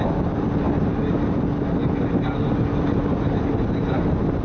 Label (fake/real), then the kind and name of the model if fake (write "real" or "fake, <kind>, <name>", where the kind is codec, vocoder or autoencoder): real